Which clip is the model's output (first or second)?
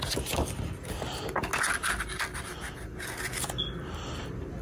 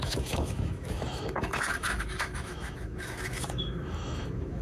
second